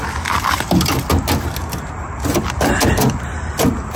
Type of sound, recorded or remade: recorded